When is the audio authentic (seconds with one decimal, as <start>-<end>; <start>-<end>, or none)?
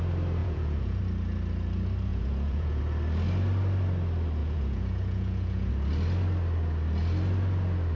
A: 0.0-0.4; 1.0-2.1; 2.8-4.4; 5.7-8.0